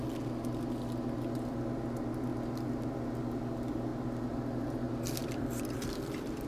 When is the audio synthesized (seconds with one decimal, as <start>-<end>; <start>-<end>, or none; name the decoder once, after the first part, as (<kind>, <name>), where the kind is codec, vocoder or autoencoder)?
5.2-6.5 (vocoder, BigVGAN v2)